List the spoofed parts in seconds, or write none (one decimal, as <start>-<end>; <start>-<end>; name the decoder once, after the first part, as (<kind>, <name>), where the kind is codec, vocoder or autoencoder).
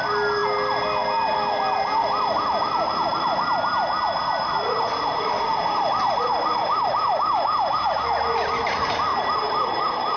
6.6-8.0 (vocoder, BigVGAN v2); 9.1-10.2